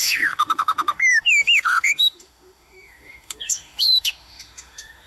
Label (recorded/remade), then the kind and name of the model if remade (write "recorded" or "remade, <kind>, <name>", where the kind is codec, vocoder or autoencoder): remade, autoencoder, DAC-VAE